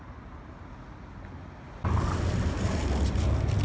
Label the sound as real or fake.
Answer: real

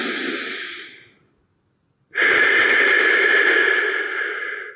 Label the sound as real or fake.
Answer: real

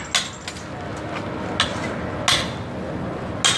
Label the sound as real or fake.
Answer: real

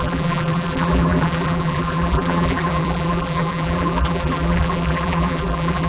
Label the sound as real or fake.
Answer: fake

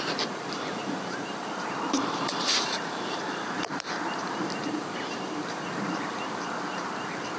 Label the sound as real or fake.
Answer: fake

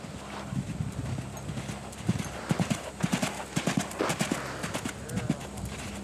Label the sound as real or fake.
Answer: real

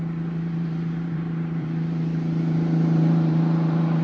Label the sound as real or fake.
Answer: fake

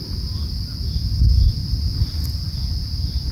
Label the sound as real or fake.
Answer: real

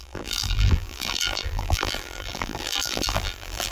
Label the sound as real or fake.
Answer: fake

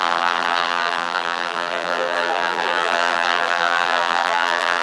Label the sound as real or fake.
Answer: fake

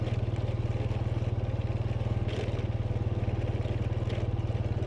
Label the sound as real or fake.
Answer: real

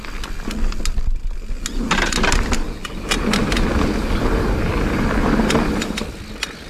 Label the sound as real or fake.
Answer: real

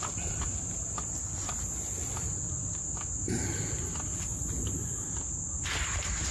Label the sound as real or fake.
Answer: real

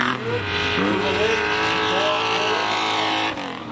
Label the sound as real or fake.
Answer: real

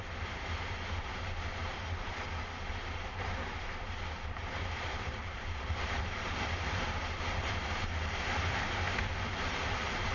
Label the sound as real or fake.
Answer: fake